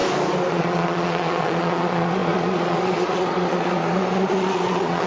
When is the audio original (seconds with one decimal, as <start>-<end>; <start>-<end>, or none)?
0.0-0.5